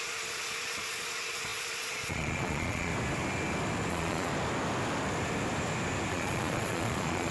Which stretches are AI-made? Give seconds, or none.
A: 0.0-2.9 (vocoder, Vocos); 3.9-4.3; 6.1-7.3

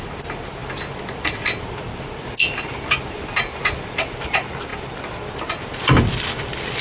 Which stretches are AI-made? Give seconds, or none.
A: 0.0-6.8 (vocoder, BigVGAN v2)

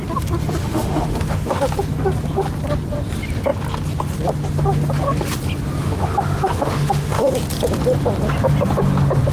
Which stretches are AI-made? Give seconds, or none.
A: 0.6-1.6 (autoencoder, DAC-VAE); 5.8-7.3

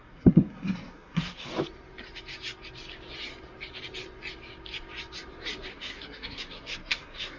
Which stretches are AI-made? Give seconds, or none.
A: 0.0-1.5 (codec, SNAC); 5.7-7.4

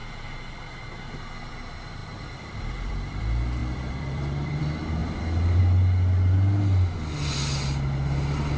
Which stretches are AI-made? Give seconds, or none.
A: 2.0-3.2 (vocoder, BigVGAN v2); 3.6-4.6; 5.0-5.6